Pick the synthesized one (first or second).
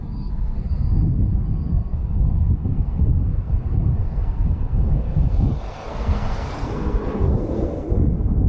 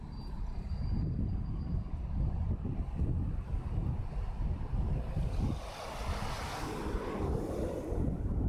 first